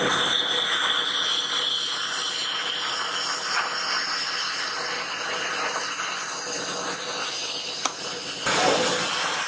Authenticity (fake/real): real